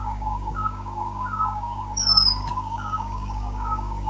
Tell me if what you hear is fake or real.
fake